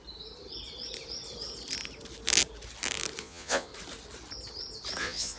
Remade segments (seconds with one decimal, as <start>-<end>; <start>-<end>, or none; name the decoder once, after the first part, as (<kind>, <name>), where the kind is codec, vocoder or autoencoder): 3.2-3.7 (vocoder, Vocos); 5.0-5.4